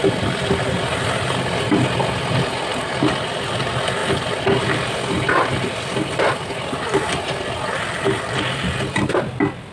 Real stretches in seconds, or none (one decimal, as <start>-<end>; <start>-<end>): 0.0-9.7